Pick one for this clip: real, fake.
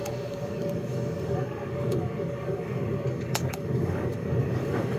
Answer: fake